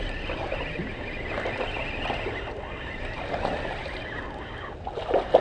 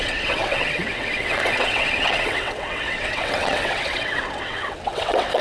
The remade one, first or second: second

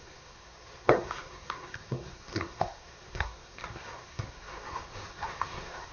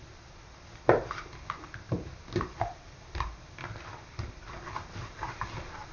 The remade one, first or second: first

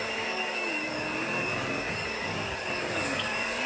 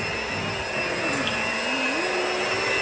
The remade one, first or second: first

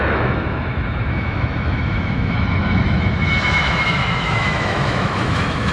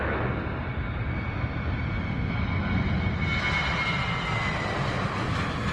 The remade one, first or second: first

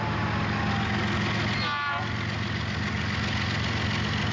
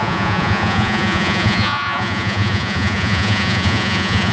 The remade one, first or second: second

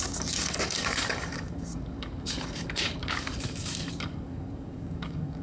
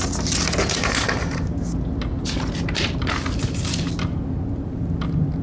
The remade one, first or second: first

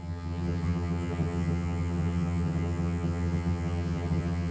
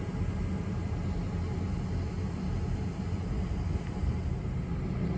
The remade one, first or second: first